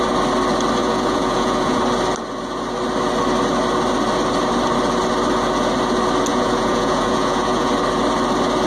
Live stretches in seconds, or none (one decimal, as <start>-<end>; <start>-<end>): 0.0-0.8; 1.8-6.3; 7.7-8.7